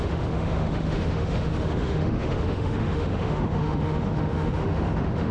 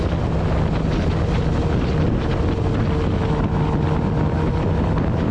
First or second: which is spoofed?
first